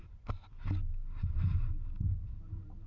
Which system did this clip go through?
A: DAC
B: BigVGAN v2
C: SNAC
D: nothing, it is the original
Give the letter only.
D